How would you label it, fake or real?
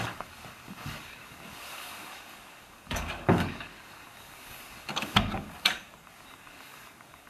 fake